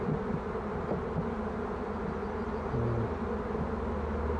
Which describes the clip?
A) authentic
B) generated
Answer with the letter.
A